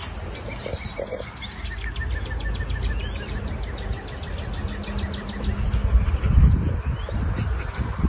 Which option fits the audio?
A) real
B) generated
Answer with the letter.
A